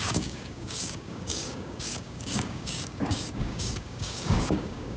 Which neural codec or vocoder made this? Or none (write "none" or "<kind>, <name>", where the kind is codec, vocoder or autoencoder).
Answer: codec, DAC